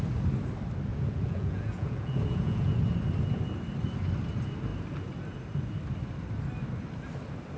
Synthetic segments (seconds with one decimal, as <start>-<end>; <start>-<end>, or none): 0.9-2.7